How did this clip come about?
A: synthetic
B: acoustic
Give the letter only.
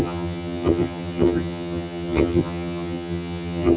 A